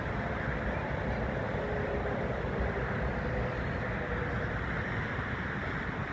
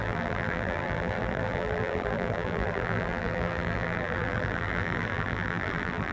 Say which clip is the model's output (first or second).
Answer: second